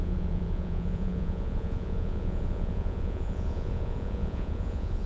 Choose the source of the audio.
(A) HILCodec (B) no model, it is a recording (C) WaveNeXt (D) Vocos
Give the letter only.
D